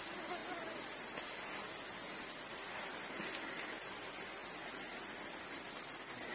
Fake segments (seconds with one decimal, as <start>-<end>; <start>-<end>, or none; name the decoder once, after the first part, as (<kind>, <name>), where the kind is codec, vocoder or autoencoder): 0.0-0.4 (vocoder, BigVGAN v2); 2.2-6.3